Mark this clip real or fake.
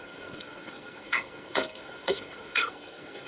fake